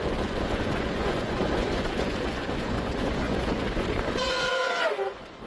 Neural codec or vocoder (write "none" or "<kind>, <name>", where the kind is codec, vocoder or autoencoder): vocoder, Vocos